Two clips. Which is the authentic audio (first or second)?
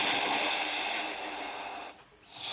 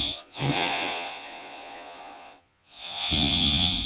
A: first